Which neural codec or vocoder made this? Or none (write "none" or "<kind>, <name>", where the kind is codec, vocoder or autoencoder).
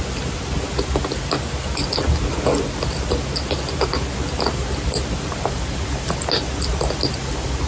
none